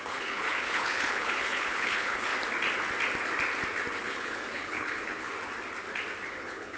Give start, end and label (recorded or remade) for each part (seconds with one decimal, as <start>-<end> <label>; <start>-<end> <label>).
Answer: 0.0-2.3 remade; 2.3-4.0 recorded; 4.0-5.3 remade; 5.3-6.3 recorded; 6.3-6.8 remade